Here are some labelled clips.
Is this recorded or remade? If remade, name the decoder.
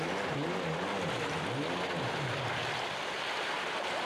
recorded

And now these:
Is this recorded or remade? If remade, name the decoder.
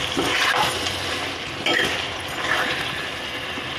recorded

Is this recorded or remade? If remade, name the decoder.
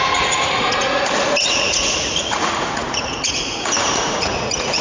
remade, vocoder, Vocos